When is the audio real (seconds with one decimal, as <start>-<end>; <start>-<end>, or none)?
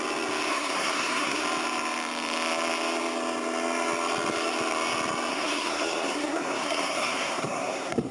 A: 0.0-0.5; 1.4-5.3